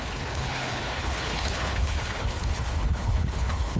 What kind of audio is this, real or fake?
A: fake